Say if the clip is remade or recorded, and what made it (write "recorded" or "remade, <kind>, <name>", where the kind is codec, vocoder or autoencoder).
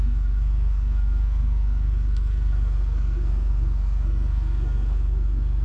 remade, codec, SNAC